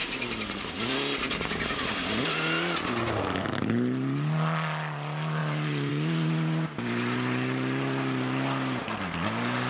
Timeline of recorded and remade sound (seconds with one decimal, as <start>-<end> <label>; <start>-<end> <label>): 0.0-9.7 recorded